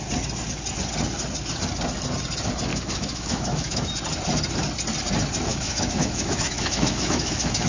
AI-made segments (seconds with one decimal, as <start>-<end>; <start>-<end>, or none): 2.7-3.9; 5.5-7.7